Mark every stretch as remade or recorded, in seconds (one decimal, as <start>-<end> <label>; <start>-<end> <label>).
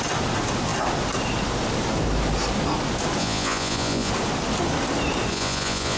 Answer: 0.0-3.2 recorded; 3.2-4.1 remade; 4.1-5.3 recorded; 5.3-6.0 remade